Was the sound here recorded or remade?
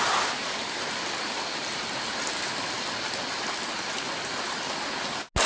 recorded